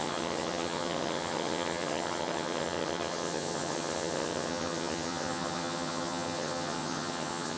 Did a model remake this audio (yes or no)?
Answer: yes